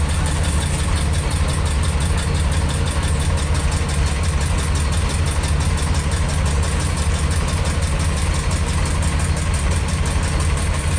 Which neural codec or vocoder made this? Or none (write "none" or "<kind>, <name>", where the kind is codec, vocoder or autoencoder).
none